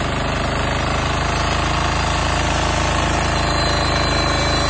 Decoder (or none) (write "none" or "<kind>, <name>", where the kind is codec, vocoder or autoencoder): none